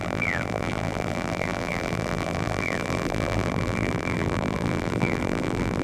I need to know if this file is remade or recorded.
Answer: remade